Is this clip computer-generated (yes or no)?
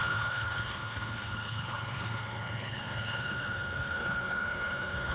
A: yes